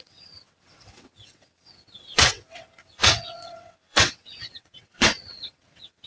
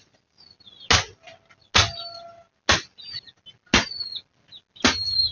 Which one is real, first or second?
second